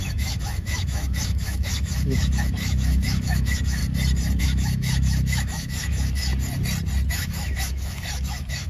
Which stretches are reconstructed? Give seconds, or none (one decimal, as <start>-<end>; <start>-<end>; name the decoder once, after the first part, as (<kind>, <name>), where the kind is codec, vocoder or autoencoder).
0.0-3.8 (autoencoder, DAC-VAE); 4.4-6.3; 7.1-8.7